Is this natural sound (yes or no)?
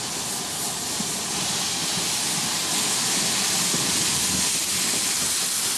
yes